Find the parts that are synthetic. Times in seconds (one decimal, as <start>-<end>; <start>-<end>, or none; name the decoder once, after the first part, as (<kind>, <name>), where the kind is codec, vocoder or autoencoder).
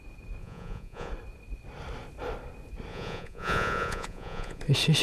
0.4-1.1 (vocoder, Vocos); 2.9-4.6